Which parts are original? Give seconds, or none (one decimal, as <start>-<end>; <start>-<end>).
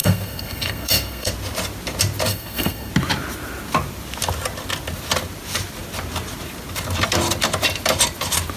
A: 1.3-2.3; 2.9-8.6